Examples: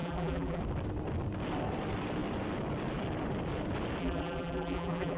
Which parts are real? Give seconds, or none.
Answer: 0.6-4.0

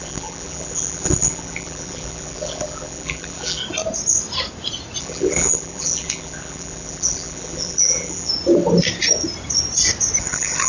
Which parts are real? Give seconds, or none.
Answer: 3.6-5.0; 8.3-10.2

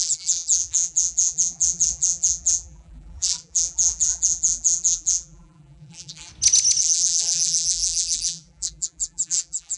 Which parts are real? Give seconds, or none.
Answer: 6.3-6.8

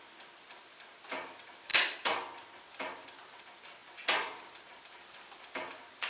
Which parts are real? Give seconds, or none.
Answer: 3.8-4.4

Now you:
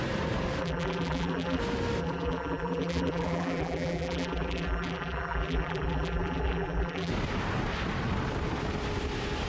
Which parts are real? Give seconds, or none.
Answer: 0.0-0.6; 1.6-2.0; 7.1-9.5

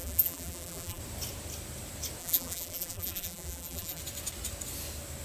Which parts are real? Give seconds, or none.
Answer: 1.0-2.2; 4.0-5.2

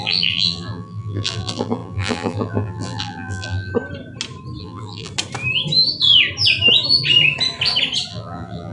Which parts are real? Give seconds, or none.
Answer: 3.7-4.6; 5.1-8.1

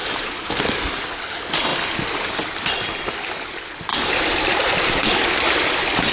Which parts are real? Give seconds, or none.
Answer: 0.5-3.9; 5.2-6.1